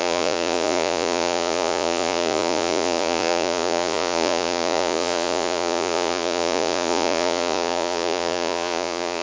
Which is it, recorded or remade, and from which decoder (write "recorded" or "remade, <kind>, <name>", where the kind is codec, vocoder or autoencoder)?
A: remade, vocoder, Vocos